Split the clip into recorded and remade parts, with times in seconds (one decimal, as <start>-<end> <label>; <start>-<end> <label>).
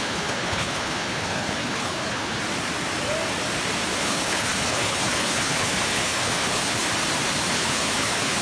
0.0-2.4 remade; 2.4-4.0 recorded; 4.0-6.9 remade; 6.9-7.5 recorded; 7.5-8.4 remade